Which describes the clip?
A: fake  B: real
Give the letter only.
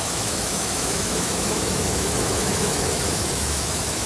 A